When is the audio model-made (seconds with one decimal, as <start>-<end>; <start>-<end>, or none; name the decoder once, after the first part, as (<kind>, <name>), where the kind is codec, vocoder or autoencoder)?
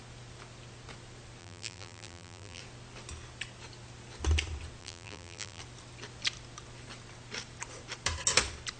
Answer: 1.4-2.6 (vocoder, BigVGAN v2); 4.8-5.6